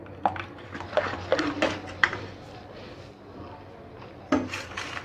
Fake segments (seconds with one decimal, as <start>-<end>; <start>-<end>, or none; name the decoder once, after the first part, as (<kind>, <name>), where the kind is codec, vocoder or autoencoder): 1.3-2.2 (vocoder, BigVGAN v2)